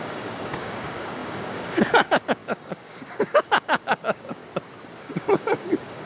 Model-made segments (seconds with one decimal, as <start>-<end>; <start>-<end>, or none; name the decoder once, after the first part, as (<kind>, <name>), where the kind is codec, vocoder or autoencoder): 0.0-4.4 (codec, DAC); 5.0-6.1